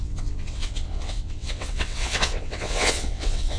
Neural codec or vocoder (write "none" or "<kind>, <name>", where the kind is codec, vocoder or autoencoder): vocoder, WaveNeXt